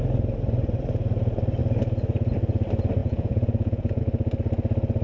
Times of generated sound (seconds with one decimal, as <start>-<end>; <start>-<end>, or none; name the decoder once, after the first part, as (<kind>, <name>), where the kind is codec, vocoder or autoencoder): 3.0-4.0 (vocoder, Vocos)